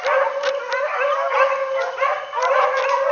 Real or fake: real